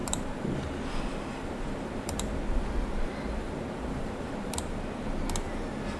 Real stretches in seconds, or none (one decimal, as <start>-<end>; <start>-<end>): 0.8-1.3; 2.3-3.4; 4.8-6.0